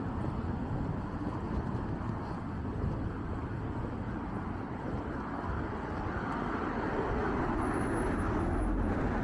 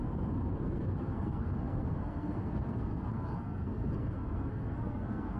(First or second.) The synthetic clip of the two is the second